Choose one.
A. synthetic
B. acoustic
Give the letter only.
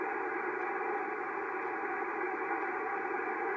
B